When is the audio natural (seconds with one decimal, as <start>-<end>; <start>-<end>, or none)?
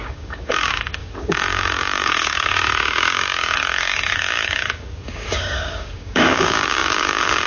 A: none